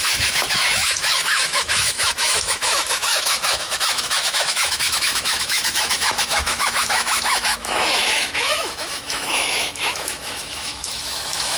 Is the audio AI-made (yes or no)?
yes